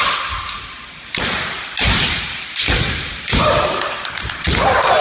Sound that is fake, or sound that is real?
fake